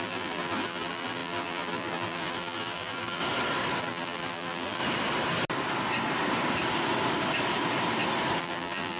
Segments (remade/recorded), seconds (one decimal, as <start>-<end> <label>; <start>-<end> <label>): 0.0-3.2 remade; 3.2-3.8 recorded; 3.8-4.8 remade; 4.8-8.4 recorded; 8.4-9.0 remade